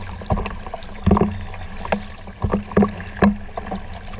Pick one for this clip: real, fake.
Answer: real